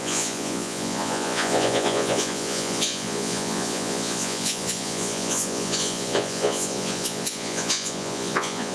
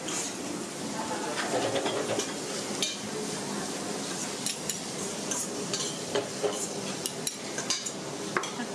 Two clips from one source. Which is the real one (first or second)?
second